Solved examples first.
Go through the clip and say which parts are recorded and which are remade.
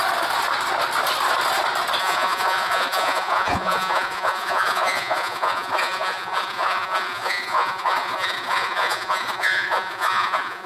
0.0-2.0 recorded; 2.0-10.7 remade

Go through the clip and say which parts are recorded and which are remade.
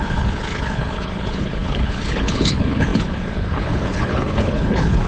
0.0-5.1 remade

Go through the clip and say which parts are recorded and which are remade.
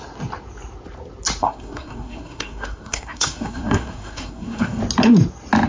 0.0-1.4 recorded; 1.4-4.8 remade; 4.8-5.7 recorded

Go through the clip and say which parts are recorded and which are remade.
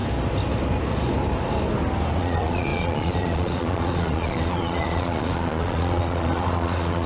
0.0-2.2 recorded; 2.2-7.1 remade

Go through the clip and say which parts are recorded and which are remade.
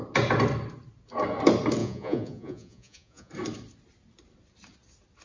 0.0-1.8 recorded; 1.8-3.3 remade; 3.3-5.2 recorded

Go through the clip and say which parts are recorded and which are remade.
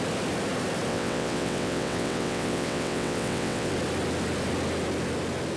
0.0-0.9 recorded; 0.9-3.7 remade; 3.7-5.6 recorded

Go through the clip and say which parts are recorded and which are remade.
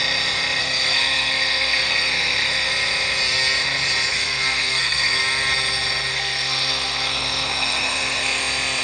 0.0-0.6 recorded; 0.6-2.7 remade; 2.7-4.1 recorded; 4.1-5.2 remade; 5.2-6.1 recorded; 6.1-8.4 remade; 8.4-8.8 recorded